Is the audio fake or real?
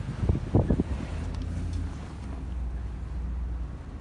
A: real